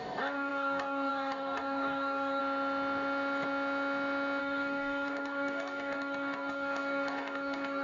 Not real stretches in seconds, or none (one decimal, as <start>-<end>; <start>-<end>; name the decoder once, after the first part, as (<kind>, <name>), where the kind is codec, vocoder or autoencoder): 0.0-2.4 (codec, DAC); 4.4-7.8